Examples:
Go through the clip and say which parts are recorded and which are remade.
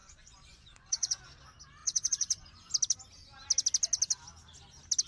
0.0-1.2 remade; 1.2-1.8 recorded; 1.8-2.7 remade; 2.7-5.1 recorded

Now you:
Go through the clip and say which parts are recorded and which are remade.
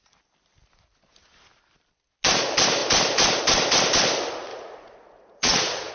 0.0-4.5 recorded; 4.5-5.9 remade